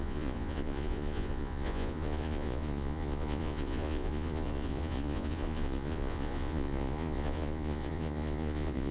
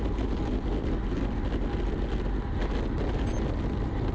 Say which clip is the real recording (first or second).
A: second